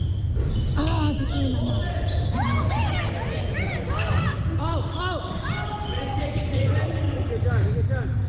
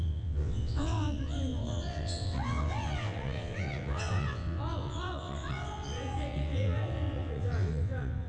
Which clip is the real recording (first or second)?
first